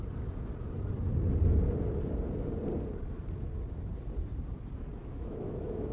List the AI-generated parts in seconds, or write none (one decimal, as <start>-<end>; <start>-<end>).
5.0-5.9